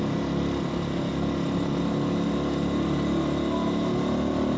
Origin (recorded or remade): recorded